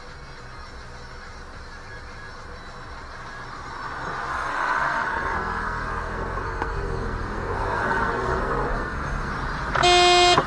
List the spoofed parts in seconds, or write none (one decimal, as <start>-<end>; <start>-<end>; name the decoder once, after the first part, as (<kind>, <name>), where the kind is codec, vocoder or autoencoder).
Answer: 4.3-9.3 (codec, SNAC)

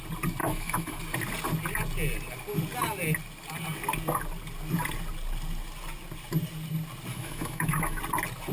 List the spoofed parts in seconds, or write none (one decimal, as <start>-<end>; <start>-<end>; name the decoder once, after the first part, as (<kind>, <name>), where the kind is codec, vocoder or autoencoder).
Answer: 0.4-1.0 (autoencoder, DAC-VAE); 7.1-8.0

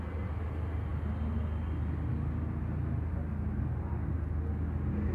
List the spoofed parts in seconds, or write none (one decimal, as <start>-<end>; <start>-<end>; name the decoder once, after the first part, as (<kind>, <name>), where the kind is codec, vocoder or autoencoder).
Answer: none

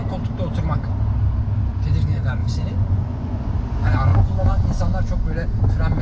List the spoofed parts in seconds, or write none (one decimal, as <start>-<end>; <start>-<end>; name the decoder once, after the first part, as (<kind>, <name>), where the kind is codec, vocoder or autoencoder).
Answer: 2.4-3.5 (vocoder, Vocos); 4.1-4.8

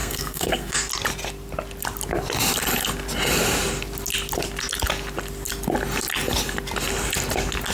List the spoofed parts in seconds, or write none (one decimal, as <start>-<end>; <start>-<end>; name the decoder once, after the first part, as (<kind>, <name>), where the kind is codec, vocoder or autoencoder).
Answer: 0.0-0.9 (codec, SNAC)

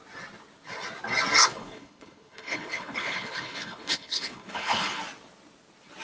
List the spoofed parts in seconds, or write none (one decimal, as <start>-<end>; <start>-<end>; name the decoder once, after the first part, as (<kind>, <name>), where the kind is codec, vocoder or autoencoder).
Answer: 1.4-5.0 (codec, HILCodec)

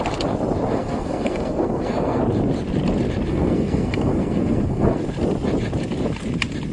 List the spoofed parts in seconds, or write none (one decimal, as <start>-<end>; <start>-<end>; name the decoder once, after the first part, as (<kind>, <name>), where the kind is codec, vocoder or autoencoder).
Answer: 0.7-2.2 (codec, SNAC); 3.3-5.0